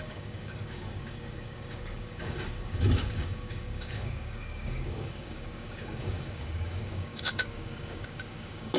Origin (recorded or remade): remade